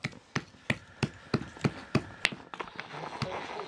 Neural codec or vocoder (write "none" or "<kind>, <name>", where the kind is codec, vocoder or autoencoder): none